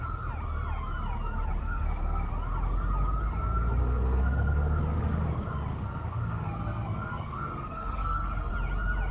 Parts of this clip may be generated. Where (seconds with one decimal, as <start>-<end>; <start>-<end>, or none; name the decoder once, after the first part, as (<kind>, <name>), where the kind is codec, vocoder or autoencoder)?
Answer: 1.6-2.3 (codec, SNAC); 3.8-4.8; 5.7-8.5